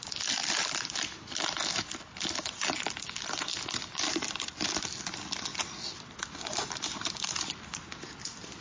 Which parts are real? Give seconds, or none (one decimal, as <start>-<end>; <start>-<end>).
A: 0.0-8.6